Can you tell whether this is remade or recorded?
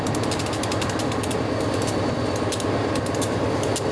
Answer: recorded